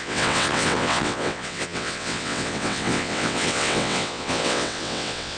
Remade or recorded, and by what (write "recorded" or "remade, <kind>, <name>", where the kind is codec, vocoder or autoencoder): remade, vocoder, WaveNeXt